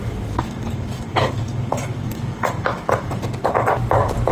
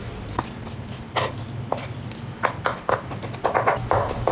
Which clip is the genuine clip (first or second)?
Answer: second